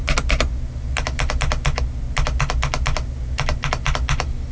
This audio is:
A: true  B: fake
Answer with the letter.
A